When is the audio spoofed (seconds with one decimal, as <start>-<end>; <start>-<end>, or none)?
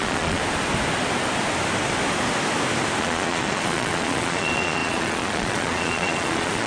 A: 0.0-0.4; 3.0-6.7